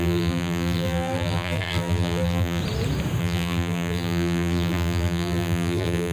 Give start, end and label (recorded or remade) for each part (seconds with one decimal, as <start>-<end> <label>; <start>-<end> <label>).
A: 0.0-2.6 remade; 2.6-3.2 recorded; 3.2-6.1 remade